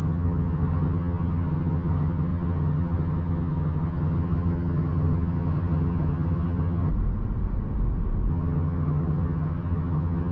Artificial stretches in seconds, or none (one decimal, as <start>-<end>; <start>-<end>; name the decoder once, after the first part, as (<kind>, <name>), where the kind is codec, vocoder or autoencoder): 0.0-6.9 (vocoder, HiFi-GAN); 8.3-10.3